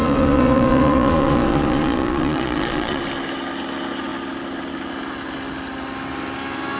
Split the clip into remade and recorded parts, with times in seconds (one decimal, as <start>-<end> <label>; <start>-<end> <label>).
0.0-3.0 remade; 3.0-6.8 recorded